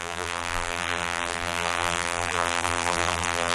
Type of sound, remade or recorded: remade